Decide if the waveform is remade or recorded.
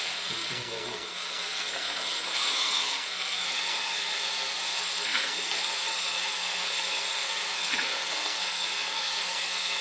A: remade